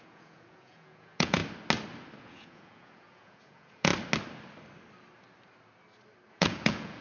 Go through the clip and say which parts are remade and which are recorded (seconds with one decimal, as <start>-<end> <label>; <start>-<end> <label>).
0.0-1.4 remade; 1.4-2.2 recorded; 2.2-3.9 remade; 3.9-6.3 recorded; 6.3-7.0 remade